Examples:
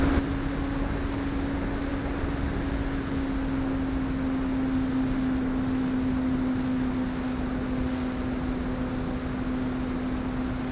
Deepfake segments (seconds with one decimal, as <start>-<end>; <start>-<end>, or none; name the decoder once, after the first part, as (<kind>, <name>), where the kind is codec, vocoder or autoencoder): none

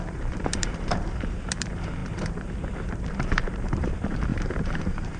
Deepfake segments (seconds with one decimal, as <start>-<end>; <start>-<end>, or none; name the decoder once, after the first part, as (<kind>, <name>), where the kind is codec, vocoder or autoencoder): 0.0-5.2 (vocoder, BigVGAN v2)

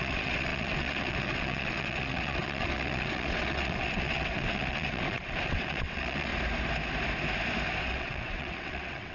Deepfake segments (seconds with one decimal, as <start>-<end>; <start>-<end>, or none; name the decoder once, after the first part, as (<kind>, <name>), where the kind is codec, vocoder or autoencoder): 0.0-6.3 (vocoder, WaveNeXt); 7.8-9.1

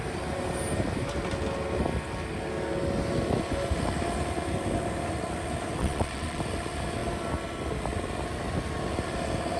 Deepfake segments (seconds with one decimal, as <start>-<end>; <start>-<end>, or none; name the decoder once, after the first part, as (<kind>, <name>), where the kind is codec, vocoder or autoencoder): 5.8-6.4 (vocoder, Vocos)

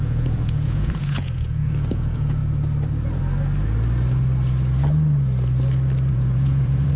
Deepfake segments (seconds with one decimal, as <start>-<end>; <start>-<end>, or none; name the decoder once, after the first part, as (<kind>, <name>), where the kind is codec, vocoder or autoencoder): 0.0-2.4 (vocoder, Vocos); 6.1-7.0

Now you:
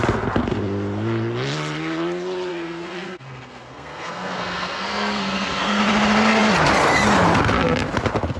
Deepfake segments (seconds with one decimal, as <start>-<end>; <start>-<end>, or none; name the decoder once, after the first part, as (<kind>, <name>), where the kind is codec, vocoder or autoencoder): 2.5-5.8 (codec, SNAC)

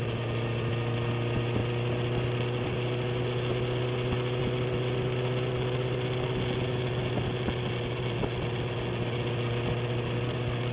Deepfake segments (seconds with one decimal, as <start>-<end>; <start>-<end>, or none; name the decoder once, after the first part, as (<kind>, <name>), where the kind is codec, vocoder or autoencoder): none

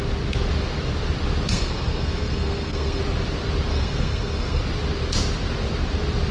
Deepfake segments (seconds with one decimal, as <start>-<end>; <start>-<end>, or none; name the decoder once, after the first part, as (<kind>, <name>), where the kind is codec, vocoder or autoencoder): 1.5-3.0 (codec, SNAC); 3.7-4.6